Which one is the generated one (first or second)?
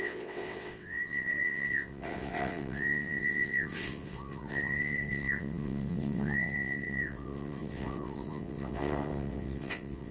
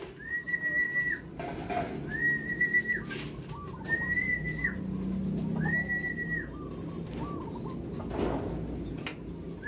first